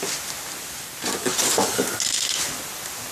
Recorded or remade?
recorded